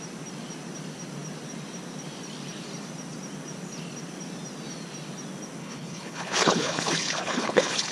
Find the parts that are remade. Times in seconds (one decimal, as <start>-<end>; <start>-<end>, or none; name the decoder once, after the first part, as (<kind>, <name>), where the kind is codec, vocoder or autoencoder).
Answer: 5.6-7.9 (codec, HILCodec)